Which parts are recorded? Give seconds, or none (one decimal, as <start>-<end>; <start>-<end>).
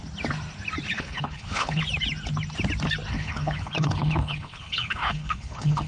0.0-0.9; 1.8-3.1